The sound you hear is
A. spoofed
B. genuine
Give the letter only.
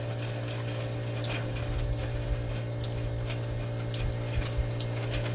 B